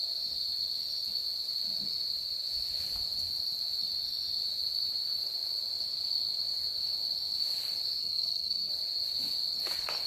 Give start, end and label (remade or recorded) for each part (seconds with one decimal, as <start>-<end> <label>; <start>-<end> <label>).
0.0-8.0 recorded; 8.0-8.7 remade; 8.7-10.1 recorded